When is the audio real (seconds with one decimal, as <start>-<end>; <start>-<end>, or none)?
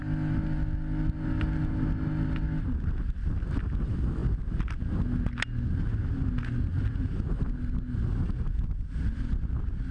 0.0-9.9